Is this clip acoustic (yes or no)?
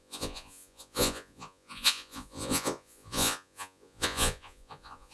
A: no